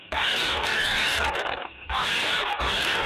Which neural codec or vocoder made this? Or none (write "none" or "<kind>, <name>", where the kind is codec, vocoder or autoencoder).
codec, DAC